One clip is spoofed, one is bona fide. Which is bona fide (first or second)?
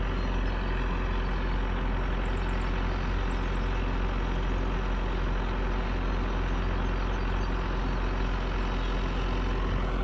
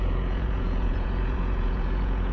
first